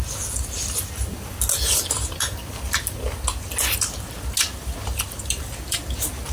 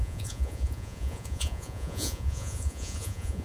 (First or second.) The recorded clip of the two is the first